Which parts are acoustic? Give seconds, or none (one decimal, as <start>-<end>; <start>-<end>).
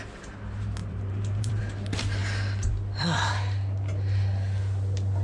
0.0-0.8; 1.6-5.2